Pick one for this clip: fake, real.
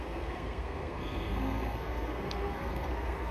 fake